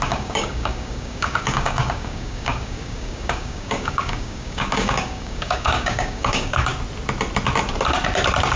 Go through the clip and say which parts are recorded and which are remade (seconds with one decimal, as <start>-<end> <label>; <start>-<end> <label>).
0.0-6.7 remade; 6.7-8.6 recorded